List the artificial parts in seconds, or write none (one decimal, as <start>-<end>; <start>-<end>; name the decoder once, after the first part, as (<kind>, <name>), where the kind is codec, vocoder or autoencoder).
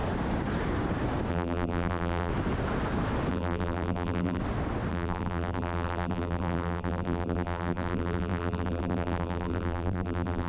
1.3-2.3 (vocoder, BigVGAN v2); 3.3-4.4; 4.9-10.5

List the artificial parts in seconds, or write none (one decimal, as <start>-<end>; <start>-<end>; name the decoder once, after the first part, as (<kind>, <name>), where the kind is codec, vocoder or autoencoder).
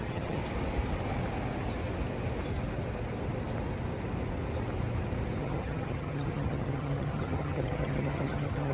0.0-0.4 (vocoder, HiFi-GAN); 5.4-8.7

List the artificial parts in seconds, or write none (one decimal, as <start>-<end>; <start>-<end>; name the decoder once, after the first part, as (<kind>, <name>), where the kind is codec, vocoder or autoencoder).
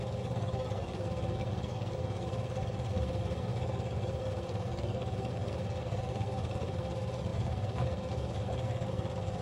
0.0-9.4 (codec, SNAC)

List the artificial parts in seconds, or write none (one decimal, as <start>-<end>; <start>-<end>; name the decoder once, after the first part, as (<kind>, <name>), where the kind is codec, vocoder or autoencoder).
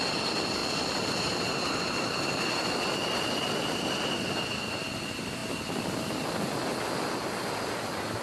none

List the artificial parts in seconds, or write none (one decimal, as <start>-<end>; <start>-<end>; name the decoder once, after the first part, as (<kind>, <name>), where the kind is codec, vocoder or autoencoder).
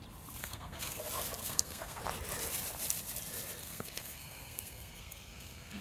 0.4-1.0 (codec, SNAC); 1.4-2.0; 3.6-5.8